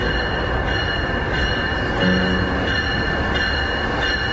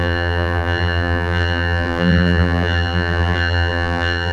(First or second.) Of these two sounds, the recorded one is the first